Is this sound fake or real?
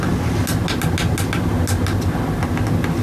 real